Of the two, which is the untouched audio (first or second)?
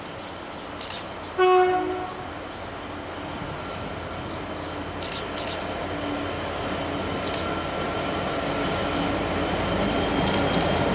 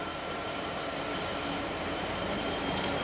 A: first